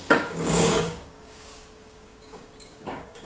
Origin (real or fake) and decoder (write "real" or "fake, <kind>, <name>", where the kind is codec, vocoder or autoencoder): fake, codec, DAC